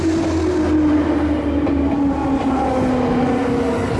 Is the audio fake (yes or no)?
no